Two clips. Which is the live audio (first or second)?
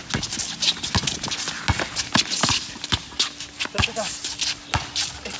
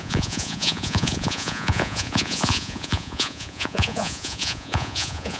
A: first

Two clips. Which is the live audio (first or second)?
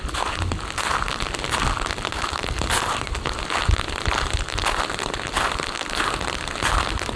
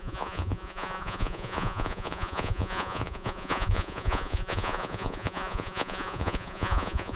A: first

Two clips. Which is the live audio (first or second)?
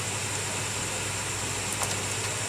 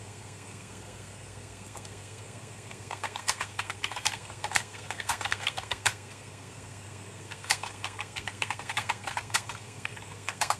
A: first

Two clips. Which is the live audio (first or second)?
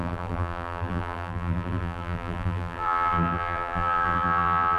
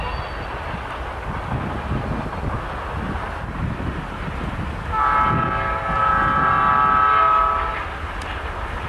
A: second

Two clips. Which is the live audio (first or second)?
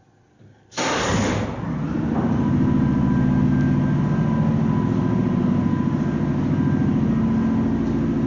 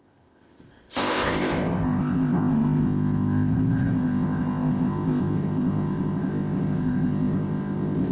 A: first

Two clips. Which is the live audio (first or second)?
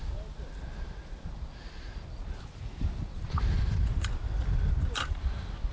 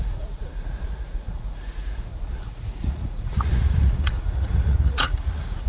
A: first